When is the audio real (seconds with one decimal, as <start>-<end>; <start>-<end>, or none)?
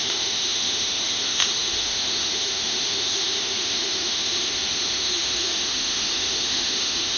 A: none